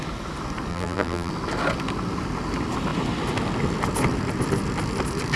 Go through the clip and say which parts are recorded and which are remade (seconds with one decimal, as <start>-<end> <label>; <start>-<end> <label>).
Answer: 0.0-0.7 recorded; 0.7-1.3 remade; 1.3-5.4 recorded